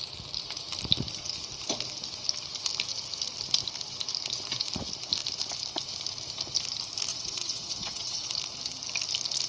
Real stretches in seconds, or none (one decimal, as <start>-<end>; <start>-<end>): 0.0-7.1; 8.3-9.5